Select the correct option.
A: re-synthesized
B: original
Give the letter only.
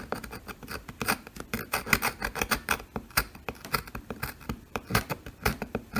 A